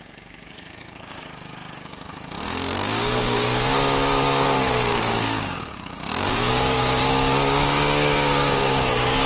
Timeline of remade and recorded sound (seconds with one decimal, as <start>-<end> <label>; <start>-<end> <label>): 0.0-9.3 remade